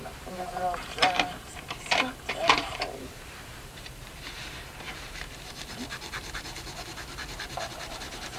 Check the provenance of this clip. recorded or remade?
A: remade